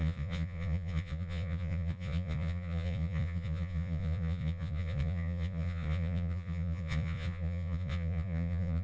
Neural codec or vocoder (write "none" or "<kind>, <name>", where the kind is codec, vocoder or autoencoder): vocoder, Vocos